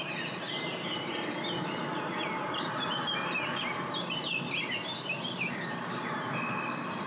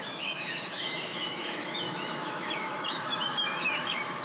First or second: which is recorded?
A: first